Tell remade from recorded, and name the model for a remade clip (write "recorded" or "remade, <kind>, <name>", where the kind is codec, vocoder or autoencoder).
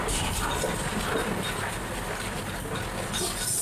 recorded